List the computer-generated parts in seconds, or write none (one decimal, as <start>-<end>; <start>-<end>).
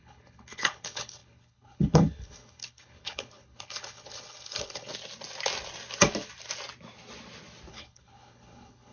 0.0-4.9; 7.7-8.9